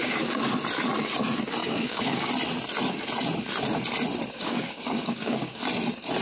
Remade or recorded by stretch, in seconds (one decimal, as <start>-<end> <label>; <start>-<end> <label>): 0.0-0.5 remade; 0.5-1.6 recorded; 1.6-2.3 remade; 2.3-4.4 recorded; 4.4-5.6 remade; 5.6-6.2 recorded